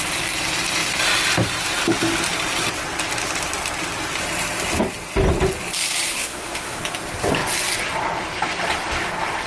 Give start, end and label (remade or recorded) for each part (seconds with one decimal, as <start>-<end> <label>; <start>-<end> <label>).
0.0-6.1 recorded; 6.1-6.8 remade; 6.8-9.5 recorded